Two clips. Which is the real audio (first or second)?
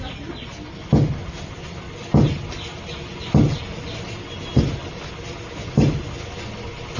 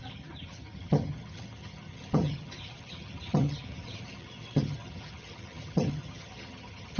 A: first